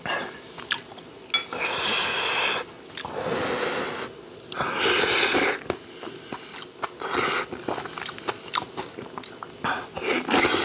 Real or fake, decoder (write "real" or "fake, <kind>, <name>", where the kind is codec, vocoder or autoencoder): real